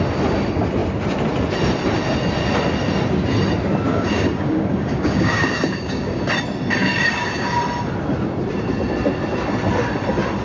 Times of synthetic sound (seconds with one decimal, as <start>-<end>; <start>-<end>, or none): 3.9-6.2; 6.8-7.6